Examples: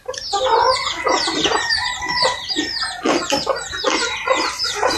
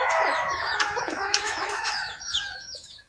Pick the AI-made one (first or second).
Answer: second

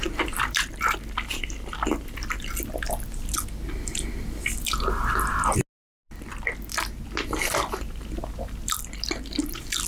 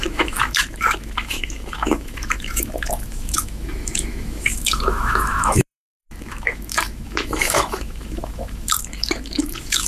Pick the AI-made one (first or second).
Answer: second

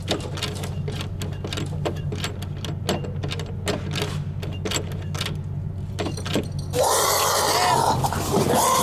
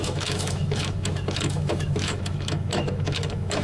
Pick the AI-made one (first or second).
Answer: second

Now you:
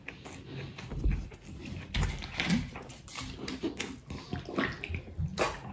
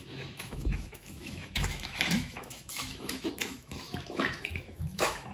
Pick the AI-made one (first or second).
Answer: second